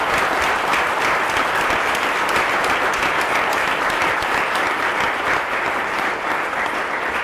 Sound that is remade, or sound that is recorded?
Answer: recorded